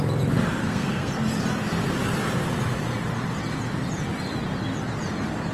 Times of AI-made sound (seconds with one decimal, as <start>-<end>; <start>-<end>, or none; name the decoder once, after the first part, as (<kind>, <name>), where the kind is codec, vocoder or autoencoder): 0.6-1.1 (codec, SNAC)